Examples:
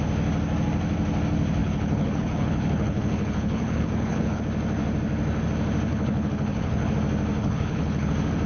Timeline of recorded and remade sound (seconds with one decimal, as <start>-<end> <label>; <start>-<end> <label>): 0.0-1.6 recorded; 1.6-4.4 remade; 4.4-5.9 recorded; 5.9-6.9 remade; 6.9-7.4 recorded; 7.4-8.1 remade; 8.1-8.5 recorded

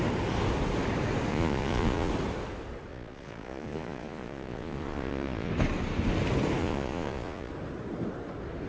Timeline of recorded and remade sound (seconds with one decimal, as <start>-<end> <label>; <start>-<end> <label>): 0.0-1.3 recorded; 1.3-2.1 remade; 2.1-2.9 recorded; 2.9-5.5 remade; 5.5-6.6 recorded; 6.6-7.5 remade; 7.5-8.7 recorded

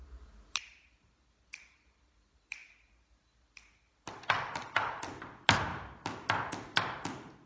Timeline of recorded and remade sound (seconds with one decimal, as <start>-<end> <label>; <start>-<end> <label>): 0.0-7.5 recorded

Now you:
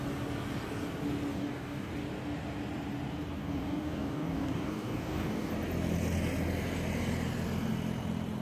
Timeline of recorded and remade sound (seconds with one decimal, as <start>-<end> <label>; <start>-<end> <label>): 0.0-1.3 recorded; 1.3-1.9 remade; 1.9-3.4 recorded; 3.4-5.5 remade; 5.5-8.4 recorded

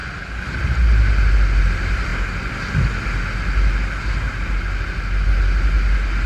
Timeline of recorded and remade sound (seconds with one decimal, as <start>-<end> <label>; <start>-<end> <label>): 0.0-6.3 recorded

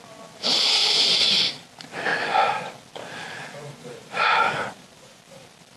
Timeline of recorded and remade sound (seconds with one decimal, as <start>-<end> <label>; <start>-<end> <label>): 0.0-0.8 recorded; 0.8-1.5 remade; 1.5-2.1 recorded; 2.1-2.7 remade; 2.7-3.4 recorded; 3.4-5.2 remade; 5.2-5.8 recorded